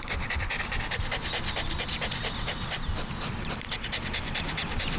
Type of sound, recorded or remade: recorded